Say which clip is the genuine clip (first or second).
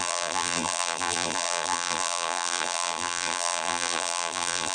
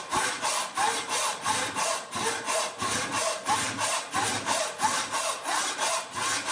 second